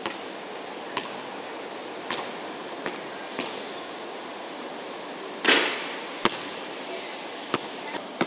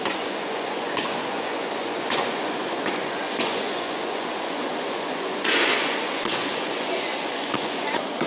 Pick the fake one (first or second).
second